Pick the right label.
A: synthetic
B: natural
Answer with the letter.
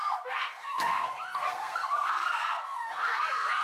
A